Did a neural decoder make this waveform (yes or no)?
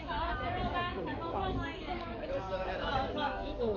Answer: yes